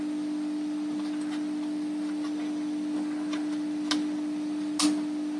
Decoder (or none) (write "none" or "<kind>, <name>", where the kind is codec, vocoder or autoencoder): none